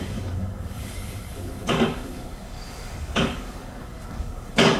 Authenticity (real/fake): fake